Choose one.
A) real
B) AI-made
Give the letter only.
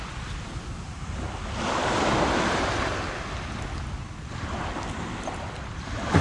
A